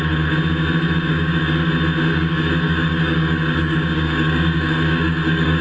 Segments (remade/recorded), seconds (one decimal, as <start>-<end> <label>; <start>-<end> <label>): 0.0-1.1 recorded; 1.1-1.7 remade; 1.7-2.1 recorded; 2.1-5.6 remade